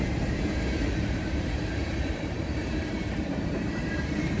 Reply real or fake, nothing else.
fake